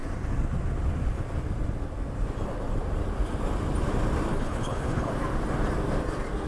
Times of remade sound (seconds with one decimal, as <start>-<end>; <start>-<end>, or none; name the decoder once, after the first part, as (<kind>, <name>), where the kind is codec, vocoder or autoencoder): 4.3-5.1 (codec, HILCodec)